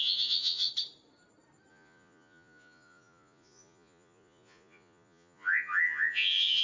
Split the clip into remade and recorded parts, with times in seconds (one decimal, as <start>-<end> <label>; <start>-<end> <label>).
0.0-0.7 remade; 0.7-1.7 recorded; 1.7-6.6 remade